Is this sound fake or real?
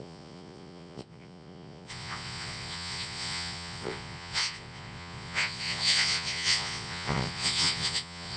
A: fake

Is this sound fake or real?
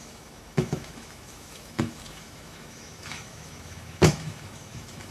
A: fake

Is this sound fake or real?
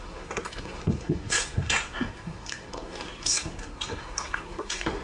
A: fake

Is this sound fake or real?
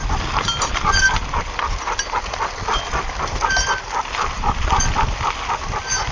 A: real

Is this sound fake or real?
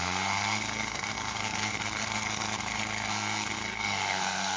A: fake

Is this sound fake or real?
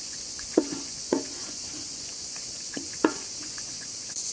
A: fake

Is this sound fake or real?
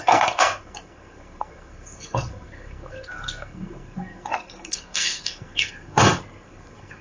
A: fake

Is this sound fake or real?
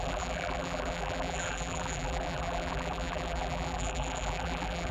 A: fake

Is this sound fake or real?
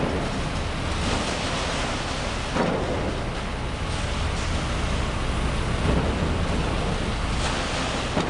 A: real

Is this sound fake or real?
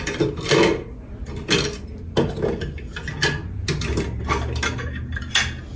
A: real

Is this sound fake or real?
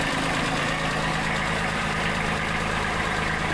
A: fake